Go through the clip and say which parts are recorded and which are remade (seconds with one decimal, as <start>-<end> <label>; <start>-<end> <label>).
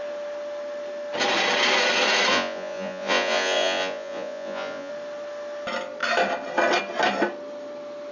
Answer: 0.0-2.3 recorded; 2.3-4.9 remade; 4.9-8.1 recorded